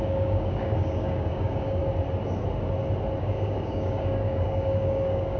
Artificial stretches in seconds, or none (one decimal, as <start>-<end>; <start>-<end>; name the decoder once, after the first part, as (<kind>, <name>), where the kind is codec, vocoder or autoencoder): 0.0-1.8 (codec, DAC); 3.2-5.4